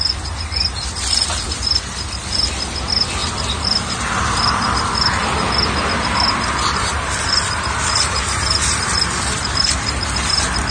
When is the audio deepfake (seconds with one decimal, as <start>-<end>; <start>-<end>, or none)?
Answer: 0.0-10.7